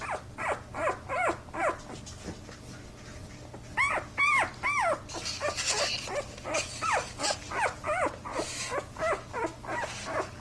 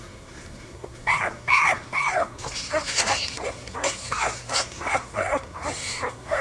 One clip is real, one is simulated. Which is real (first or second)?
first